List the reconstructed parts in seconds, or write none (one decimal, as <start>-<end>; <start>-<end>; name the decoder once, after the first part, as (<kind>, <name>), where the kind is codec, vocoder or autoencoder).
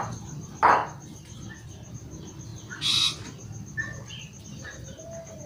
none